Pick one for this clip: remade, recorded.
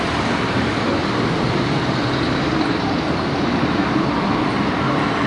remade